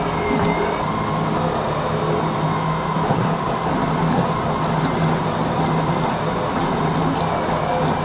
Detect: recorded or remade recorded